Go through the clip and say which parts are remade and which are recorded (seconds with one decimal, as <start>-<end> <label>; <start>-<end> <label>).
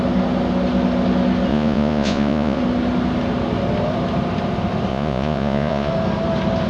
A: 0.0-1.5 recorded; 1.5-2.6 remade; 2.6-4.9 recorded; 4.9-5.9 remade; 5.9-6.7 recorded